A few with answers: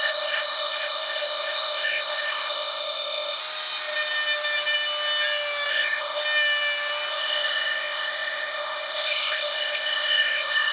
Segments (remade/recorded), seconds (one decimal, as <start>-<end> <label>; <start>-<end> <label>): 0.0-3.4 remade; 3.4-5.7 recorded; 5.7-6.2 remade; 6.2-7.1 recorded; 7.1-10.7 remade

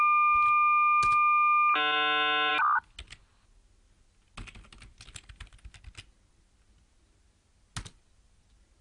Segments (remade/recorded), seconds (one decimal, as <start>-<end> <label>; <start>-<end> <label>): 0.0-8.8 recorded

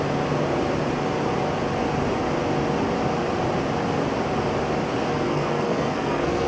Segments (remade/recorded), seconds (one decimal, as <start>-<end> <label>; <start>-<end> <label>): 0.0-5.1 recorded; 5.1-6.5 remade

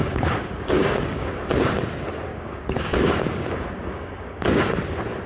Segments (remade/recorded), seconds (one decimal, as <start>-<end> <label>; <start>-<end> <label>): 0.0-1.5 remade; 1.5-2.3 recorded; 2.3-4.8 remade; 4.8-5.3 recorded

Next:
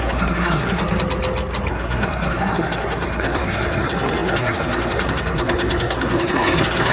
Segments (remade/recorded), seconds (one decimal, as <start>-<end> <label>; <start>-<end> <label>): 0.0-0.8 remade; 0.8-1.7 recorded; 1.7-6.9 remade

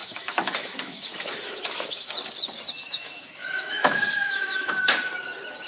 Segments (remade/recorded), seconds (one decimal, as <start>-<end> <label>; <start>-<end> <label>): 0.0-2.1 remade; 2.1-2.8 recorded; 2.8-4.8 remade; 4.8-5.7 recorded